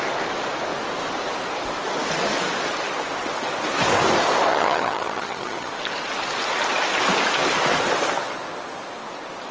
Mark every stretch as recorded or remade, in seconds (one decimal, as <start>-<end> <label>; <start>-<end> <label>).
0.0-4.5 recorded; 4.5-5.7 remade; 5.7-9.5 recorded